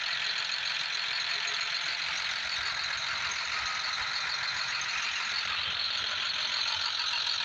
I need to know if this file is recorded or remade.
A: remade